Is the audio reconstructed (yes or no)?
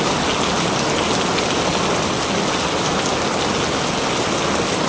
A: no